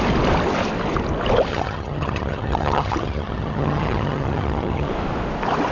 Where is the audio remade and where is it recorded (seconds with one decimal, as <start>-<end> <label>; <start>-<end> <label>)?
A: 0.0-1.5 recorded; 1.5-4.9 remade; 4.9-5.7 recorded